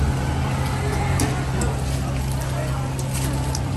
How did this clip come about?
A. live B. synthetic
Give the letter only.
A